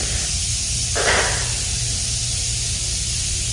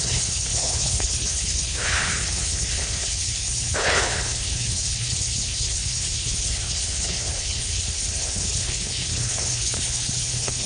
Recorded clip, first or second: first